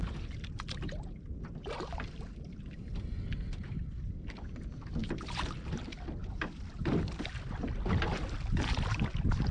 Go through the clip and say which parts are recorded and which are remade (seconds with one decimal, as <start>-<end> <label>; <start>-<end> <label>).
0.0-9.5 recorded